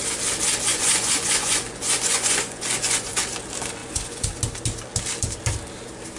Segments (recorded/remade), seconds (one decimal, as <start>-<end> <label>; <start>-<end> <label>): 0.0-0.7 recorded; 0.7-3.1 remade; 3.1-3.8 recorded; 3.8-4.4 remade; 4.4-6.2 recorded